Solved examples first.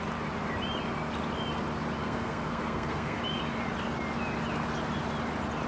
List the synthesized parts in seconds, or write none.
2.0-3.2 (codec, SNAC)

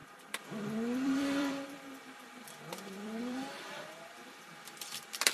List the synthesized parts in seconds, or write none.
0.0-5.3 (vocoder, BigVGAN v2)

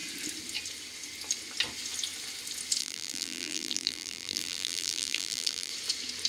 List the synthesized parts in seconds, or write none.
2.8-5.7 (vocoder, BigVGAN v2)